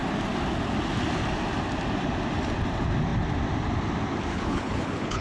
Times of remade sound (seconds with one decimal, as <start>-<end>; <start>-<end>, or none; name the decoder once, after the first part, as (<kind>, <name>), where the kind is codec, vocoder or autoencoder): 4.3-5.2 (codec, HILCodec)